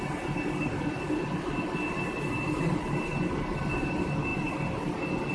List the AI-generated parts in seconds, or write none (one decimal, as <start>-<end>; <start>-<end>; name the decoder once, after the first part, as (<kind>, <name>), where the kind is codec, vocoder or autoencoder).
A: none